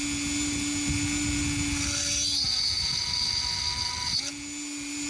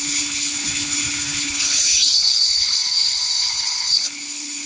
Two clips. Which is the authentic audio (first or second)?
first